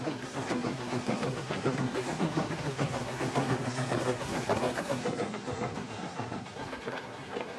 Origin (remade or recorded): remade